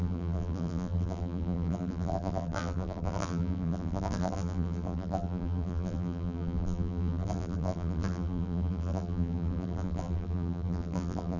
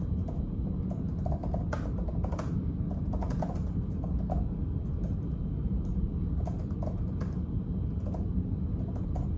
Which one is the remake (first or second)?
first